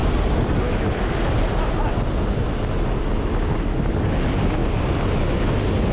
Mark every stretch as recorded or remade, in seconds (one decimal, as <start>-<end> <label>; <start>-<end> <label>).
0.0-5.9 recorded